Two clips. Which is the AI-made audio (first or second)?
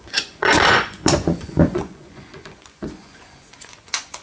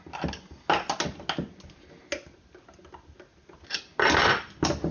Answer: first